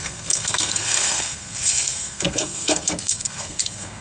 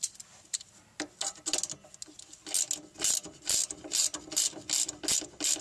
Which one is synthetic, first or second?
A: first